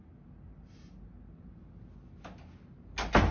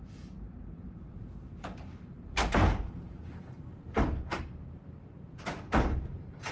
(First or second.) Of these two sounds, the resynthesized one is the second